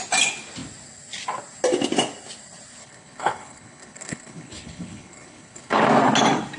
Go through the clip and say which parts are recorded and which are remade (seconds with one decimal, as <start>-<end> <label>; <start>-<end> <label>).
0.0-2.8 recorded; 2.8-5.8 remade; 5.8-6.6 recorded